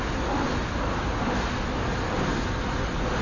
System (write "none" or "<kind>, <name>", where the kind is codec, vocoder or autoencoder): none